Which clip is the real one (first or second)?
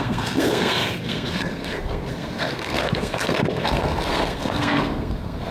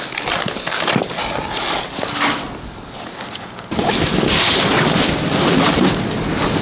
second